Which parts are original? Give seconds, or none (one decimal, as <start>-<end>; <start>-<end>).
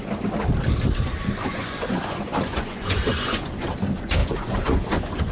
0.0-1.5; 3.5-4.2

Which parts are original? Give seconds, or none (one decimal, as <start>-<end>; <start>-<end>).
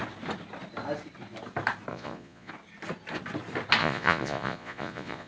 0.0-1.9; 2.5-3.8